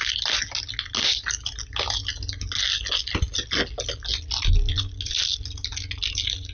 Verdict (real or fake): real